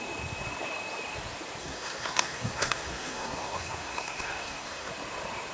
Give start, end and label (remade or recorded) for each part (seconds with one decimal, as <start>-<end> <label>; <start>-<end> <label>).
0.0-1.6 recorded; 1.6-4.9 remade; 4.9-5.5 recorded